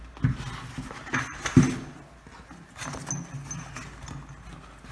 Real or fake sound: real